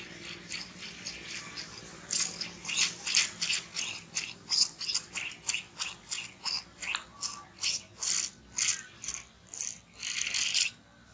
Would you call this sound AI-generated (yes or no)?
no